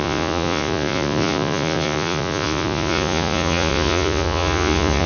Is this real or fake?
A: fake